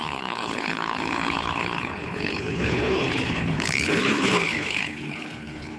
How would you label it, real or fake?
fake